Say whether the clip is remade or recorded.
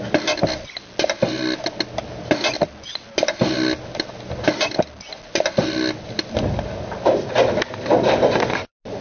recorded